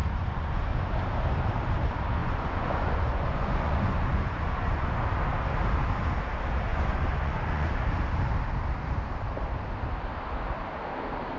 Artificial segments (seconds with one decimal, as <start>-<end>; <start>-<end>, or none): 0.0-0.9; 2.2-4.9; 6.7-7.7